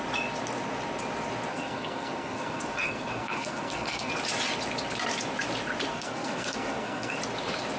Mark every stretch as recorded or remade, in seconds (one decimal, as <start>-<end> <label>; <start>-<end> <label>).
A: 0.0-1.5 recorded; 1.5-4.1 remade; 4.1-5.9 recorded; 5.9-7.2 remade; 7.2-7.8 recorded